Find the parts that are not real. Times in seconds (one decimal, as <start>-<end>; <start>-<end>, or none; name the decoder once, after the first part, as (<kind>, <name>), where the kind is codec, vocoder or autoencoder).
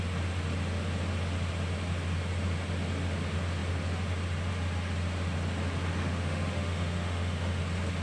6.0-7.6 (autoencoder, DAC-VAE)